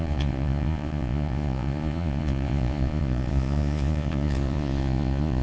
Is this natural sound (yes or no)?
no